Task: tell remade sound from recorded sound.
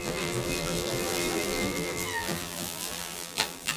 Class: remade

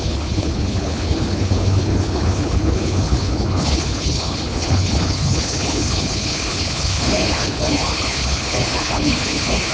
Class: remade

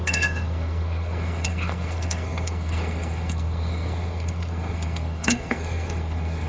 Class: remade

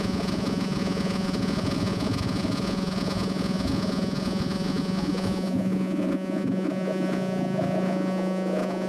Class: remade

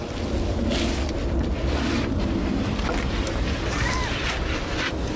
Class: recorded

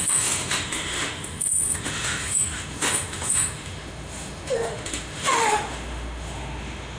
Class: remade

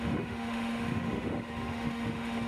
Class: remade